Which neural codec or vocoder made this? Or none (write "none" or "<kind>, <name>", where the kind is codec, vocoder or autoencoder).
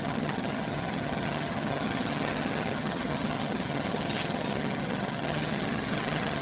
vocoder, HiFi-GAN